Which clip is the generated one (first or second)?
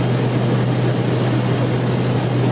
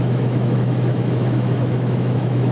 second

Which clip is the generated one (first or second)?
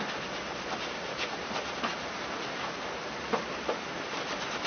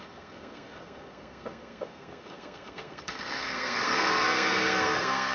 second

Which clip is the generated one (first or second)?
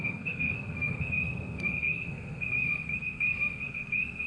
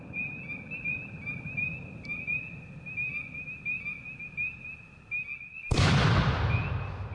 first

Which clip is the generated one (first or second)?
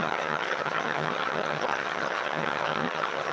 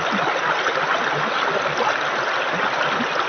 first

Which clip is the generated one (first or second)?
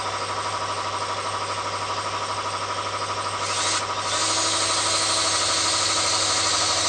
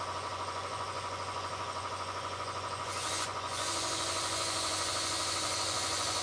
second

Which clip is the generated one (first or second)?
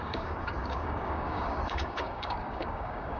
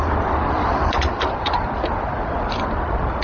first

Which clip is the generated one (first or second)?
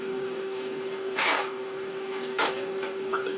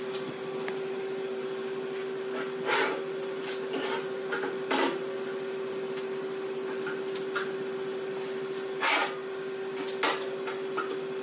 first